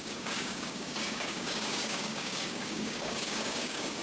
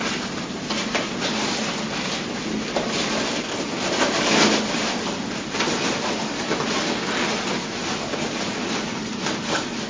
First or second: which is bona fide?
second